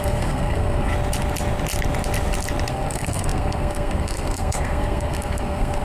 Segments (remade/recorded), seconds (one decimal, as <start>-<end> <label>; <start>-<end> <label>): 0.0-0.9 remade; 0.9-2.7 recorded; 2.7-5.8 remade